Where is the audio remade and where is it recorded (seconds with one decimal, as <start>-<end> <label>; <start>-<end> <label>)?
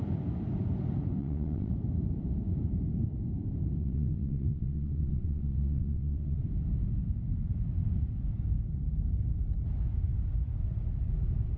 0.0-1.2 recorded; 1.2-1.7 remade; 1.7-3.8 recorded; 3.8-6.4 remade; 6.4-11.6 recorded